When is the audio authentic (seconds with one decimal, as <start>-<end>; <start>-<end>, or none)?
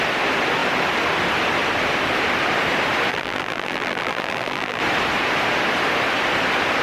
0.0-3.1; 4.8-6.8